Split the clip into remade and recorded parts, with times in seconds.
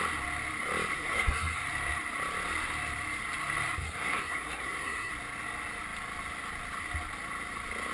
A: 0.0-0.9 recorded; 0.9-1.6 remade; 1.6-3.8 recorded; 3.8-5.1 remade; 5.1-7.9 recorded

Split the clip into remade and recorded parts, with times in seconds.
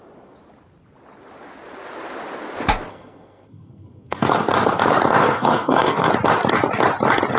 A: 0.0-2.9 recorded; 2.9-4.2 remade; 4.2-5.2 recorded; 5.2-6.1 remade; 6.1-7.4 recorded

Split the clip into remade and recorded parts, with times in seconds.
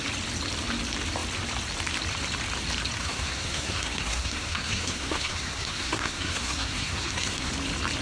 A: 0.0-3.0 recorded; 3.0-7.5 remade; 7.5-8.0 recorded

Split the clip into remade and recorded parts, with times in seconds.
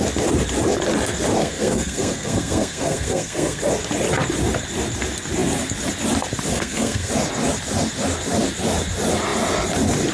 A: 0.0-1.4 recorded; 1.4-3.6 remade; 3.6-6.5 recorded; 6.5-7.1 remade; 7.1-10.1 recorded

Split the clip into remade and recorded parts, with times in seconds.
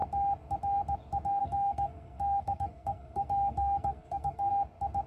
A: 0.0-1.4 recorded; 1.4-4.5 remade; 4.5-5.1 recorded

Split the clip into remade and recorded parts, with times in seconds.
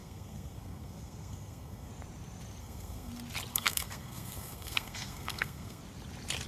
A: 0.0-1.9 remade; 1.9-2.6 recorded; 2.6-3.1 remade; 3.1-3.5 recorded; 3.5-5.8 remade; 5.8-6.5 recorded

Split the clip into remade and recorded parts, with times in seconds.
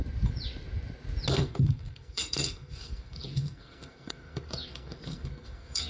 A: 0.0-1.3 recorded; 1.3-5.9 remade